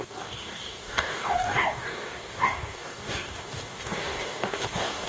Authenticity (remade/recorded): remade